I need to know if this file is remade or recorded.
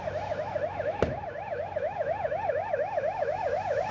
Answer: remade